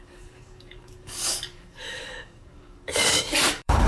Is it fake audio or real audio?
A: fake